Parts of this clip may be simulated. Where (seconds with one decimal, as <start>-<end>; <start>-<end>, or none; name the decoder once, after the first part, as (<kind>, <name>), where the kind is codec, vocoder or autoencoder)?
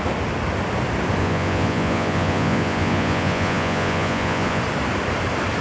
1.2-4.6 (vocoder, Vocos)